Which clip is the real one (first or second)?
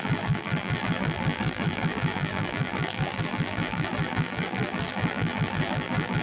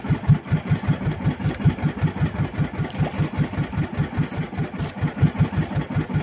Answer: second